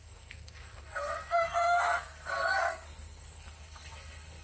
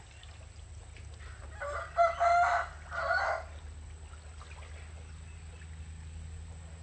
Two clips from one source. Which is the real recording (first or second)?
second